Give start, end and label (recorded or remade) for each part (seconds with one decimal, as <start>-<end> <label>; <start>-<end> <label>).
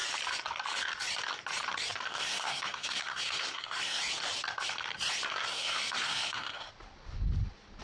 0.0-2.1 recorded; 2.1-4.0 remade; 4.0-5.5 recorded; 5.5-6.7 remade; 6.7-7.8 recorded